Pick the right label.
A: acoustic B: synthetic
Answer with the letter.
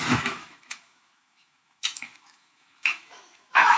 B